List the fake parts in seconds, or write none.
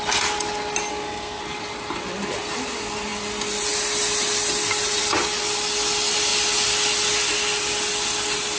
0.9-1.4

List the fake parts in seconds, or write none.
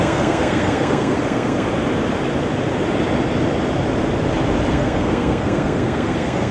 0.0-1.7; 4.7-6.5